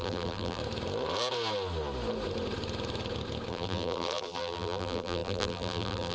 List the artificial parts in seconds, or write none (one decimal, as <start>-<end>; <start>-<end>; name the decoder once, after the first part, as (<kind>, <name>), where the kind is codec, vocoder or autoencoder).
0.0-0.6 (vocoder, BigVGAN v2); 3.5-6.1